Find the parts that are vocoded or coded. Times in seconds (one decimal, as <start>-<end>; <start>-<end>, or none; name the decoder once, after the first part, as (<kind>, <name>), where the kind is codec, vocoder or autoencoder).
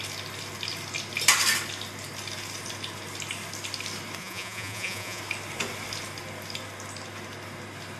4.2-5.2 (vocoder, Vocos)